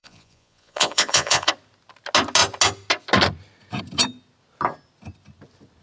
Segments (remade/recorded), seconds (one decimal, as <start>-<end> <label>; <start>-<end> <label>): 0.0-1.5 remade; 1.5-5.8 recorded